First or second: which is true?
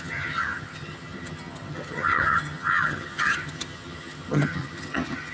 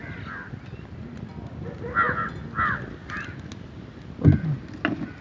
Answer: second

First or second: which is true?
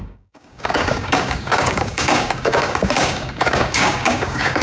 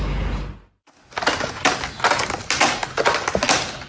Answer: second